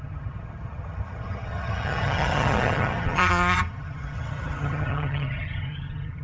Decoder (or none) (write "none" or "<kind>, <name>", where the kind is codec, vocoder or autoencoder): vocoder, HiFi-GAN